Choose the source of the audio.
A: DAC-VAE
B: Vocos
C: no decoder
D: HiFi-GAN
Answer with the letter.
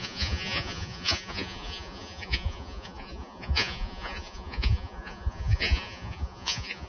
B